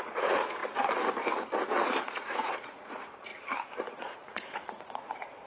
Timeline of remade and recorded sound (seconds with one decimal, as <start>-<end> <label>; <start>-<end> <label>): 0.0-0.6 remade; 0.6-2.1 recorded; 2.1-3.3 remade; 3.3-4.0 recorded; 4.0-5.5 remade